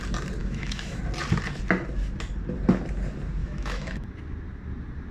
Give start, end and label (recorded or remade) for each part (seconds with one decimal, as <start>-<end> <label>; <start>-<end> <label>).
0.0-0.4 recorded; 0.4-1.0 remade; 1.0-3.4 recorded; 3.4-4.1 remade; 4.1-5.1 recorded